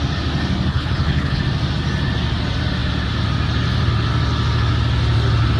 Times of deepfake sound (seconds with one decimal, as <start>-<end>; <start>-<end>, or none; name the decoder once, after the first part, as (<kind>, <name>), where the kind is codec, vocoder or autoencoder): 0.7-1.4 (codec, HILCodec)